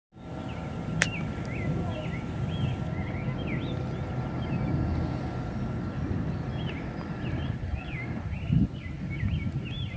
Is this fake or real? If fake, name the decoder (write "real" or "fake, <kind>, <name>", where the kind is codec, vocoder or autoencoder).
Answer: real